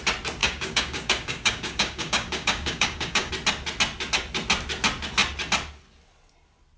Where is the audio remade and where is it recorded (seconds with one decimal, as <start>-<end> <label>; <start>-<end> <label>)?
0.0-0.4 recorded; 0.4-3.3 remade; 3.3-6.8 recorded